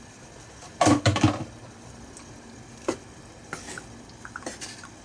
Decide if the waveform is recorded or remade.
recorded